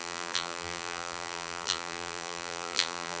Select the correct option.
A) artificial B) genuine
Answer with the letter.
A